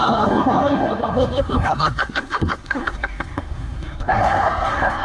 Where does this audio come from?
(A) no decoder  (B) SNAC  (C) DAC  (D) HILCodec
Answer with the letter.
B